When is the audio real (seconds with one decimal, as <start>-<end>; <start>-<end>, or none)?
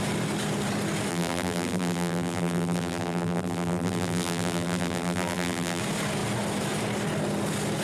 0.0-1.1; 5.8-7.8